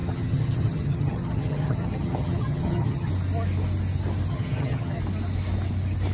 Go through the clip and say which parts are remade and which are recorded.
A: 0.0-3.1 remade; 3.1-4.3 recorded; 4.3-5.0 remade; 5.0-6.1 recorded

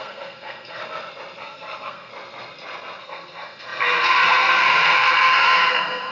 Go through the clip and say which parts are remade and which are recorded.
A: 0.0-0.8 remade; 0.8-1.4 recorded; 1.4-2.1 remade; 2.1-3.0 recorded; 3.0-6.1 remade

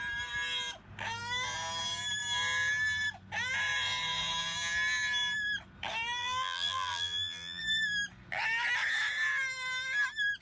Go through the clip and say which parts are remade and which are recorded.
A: 0.0-6.2 recorded; 6.2-7.6 remade; 7.6-10.4 recorded

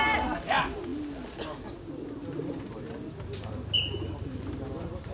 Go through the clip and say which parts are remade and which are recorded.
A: 0.0-5.1 recorded

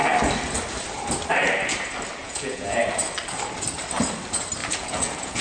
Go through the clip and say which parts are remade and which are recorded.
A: 0.0-2.2 recorded; 2.2-2.8 remade; 2.8-4.6 recorded; 4.6-5.4 remade

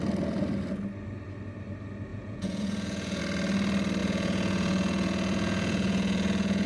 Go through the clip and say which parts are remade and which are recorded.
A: 0.0-2.1 recorded; 2.1-3.2 remade; 3.2-4.0 recorded; 4.0-6.7 remade

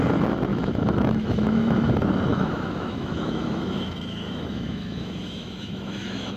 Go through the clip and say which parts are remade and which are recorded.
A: 0.0-0.5 recorded; 0.5-1.9 remade; 1.9-2.3 recorded; 2.3-6.4 remade

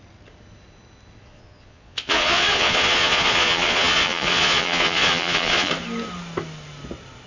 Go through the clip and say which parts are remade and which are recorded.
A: 0.0-1.3 recorded; 1.3-5.7 remade; 5.7-7.3 recorded